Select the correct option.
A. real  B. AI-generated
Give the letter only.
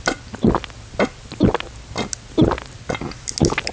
A